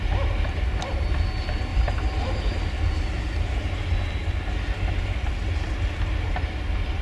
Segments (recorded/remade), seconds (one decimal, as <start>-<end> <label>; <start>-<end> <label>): 0.0-1.7 recorded; 1.7-2.6 remade; 2.6-7.0 recorded